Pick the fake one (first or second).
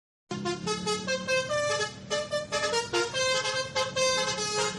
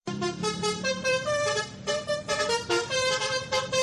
second